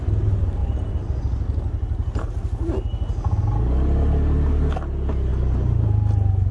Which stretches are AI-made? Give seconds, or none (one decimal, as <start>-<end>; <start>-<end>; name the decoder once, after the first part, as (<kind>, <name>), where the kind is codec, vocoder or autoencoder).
none